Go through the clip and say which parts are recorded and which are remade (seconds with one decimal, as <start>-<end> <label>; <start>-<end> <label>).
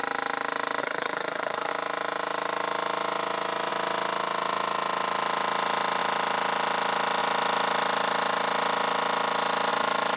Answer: 0.0-0.8 recorded; 0.8-1.7 remade; 1.7-10.2 recorded